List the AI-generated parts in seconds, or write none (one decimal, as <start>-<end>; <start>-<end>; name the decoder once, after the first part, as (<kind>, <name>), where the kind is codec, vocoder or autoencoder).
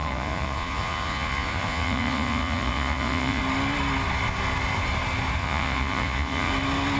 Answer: 0.0-3.4 (vocoder, Vocos); 5.4-6.5